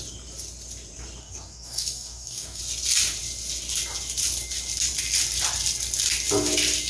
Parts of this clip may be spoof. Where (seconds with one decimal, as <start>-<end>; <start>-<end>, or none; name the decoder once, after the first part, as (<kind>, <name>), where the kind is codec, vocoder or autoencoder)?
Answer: 1.2-2.6 (codec, DAC)

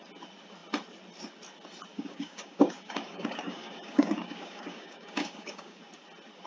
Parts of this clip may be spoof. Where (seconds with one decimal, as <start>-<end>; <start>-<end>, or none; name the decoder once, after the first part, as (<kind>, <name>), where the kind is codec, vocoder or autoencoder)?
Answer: 1.9-5.8 (codec, DAC)

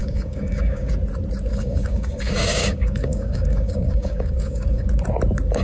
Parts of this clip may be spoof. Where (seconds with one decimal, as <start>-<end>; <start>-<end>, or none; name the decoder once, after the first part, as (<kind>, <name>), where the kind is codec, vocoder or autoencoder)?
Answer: 0.0-0.9 (codec, DAC); 1.5-4.9

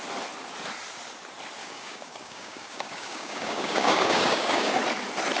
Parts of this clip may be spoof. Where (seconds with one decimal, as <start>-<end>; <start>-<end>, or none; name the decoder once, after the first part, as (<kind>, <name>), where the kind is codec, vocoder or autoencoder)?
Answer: 1.6-4.7 (codec, DAC)

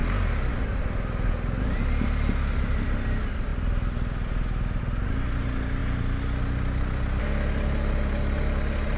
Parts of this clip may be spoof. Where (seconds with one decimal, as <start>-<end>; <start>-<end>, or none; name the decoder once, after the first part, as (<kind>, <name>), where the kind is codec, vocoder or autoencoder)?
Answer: none

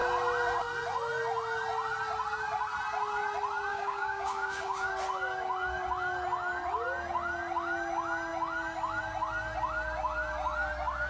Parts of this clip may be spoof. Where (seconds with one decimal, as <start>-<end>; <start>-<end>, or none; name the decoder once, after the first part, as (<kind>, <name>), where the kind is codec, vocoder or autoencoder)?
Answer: 3.7-4.9 (codec, DAC)

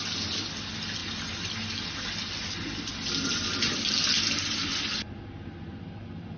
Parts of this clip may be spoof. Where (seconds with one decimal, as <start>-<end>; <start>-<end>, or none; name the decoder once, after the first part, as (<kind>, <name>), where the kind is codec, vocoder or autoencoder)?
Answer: none

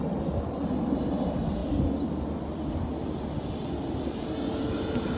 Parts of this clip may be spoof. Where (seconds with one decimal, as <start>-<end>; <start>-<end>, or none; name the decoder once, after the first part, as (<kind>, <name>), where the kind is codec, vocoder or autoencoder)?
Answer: none